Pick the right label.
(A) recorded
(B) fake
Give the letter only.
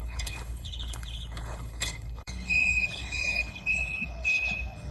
B